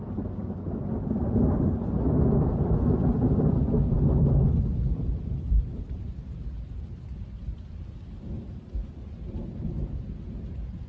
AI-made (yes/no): no